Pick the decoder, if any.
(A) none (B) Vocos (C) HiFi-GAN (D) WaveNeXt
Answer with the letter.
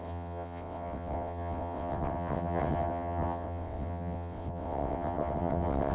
D